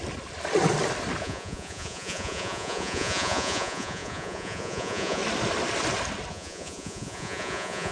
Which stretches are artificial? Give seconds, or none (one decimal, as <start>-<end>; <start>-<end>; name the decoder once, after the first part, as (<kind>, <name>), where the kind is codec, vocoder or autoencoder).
1.2-5.2 (vocoder, Vocos); 6.3-7.9